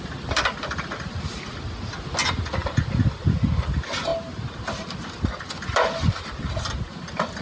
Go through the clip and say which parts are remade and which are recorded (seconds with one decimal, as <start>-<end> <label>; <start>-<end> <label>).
0.0-7.4 recorded